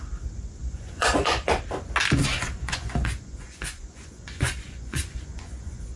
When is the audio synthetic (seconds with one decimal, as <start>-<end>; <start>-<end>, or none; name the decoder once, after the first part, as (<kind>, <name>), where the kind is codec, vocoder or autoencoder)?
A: 0.6-1.6 (vocoder, Vocos); 2.3-6.0